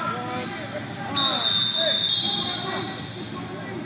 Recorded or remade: recorded